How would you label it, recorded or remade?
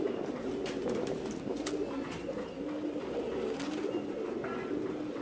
recorded